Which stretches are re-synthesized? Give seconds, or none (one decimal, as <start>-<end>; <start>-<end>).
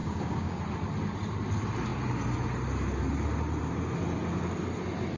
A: 0.0-0.6